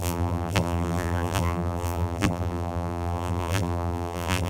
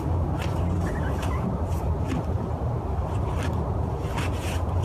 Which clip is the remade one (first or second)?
first